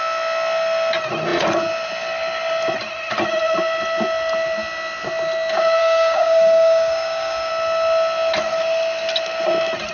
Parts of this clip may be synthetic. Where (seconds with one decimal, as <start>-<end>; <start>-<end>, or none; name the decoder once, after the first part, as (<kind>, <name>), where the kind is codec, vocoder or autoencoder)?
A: 5.8-7.5 (codec, DAC)